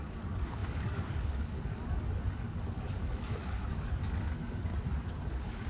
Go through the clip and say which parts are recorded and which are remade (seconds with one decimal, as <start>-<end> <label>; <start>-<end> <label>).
0.0-4.7 remade; 4.7-5.3 recorded; 5.3-5.7 remade